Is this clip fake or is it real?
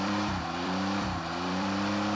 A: fake